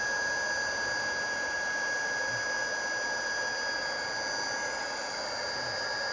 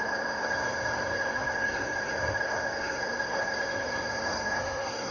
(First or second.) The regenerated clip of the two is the second